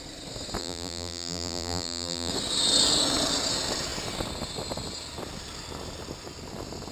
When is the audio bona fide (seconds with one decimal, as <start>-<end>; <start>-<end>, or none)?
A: 0.0-0.6; 2.3-6.9